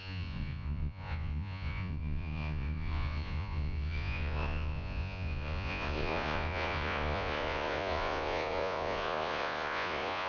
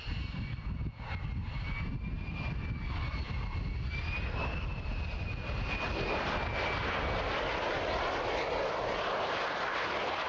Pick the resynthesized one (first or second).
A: first